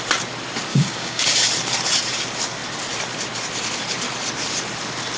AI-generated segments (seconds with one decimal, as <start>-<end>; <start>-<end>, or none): 0.7-1.5